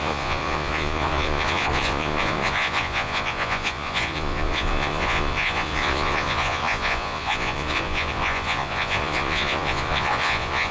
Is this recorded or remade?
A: remade